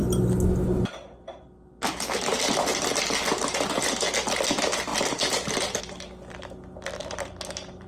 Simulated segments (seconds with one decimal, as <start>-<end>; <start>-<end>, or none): 4.9-5.8; 7.0-7.5